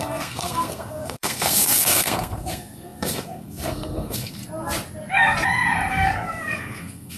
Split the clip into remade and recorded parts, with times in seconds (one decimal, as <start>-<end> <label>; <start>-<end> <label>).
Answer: 0.0-4.4 remade; 4.4-5.9 recorded; 5.9-7.2 remade